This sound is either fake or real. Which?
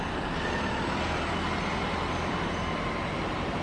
real